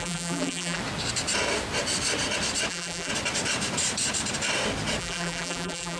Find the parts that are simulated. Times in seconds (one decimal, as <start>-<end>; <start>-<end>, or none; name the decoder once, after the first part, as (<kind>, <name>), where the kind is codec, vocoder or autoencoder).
0.0-0.8 (vocoder, BigVGAN v2); 2.7-3.1; 5.0-6.0